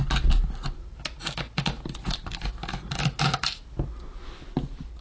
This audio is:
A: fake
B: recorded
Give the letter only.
B